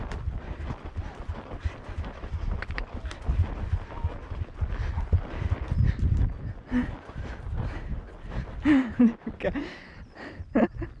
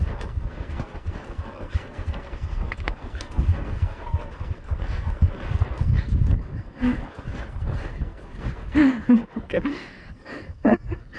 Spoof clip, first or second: second